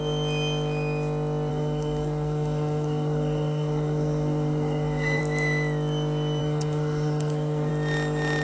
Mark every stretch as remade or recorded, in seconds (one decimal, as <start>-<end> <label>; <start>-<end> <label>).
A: 0.0-1.5 recorded; 1.5-5.2 remade; 5.2-6.4 recorded; 6.4-7.7 remade; 7.7-8.4 recorded